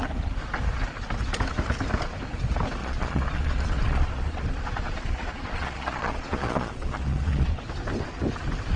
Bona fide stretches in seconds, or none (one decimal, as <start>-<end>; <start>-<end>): 0.0-2.8; 7.6-8.8